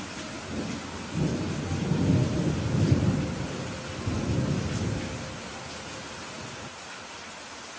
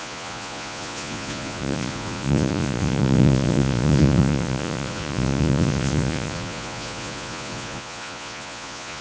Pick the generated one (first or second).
second